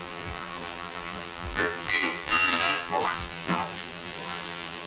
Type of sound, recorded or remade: remade